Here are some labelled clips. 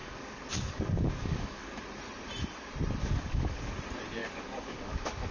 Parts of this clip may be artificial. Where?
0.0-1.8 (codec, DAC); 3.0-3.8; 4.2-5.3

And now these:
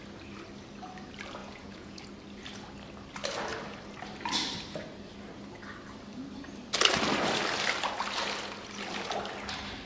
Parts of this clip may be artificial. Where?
1.4-2.0 (vocoder, Vocos)

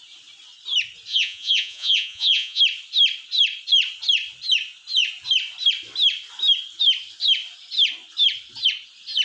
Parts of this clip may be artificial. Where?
1.1-2.6 (vocoder, Vocos)

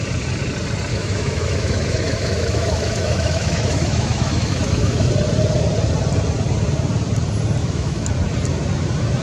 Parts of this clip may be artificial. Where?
0.9-5.1 (autoencoder, DAC-VAE); 7.6-8.1

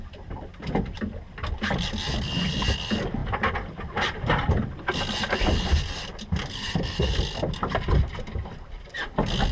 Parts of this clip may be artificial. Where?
6.5-7.1 (codec, SNAC)

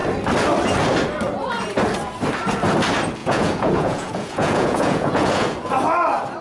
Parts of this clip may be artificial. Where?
3.2-5.7 (vocoder, Vocos)

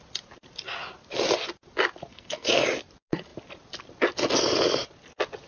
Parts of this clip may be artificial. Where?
2.1-2.6 (codec, SNAC)